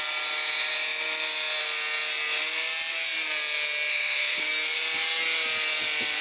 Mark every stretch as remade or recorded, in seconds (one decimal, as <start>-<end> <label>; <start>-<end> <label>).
0.0-3.9 recorded; 3.9-4.4 remade; 4.4-6.2 recorded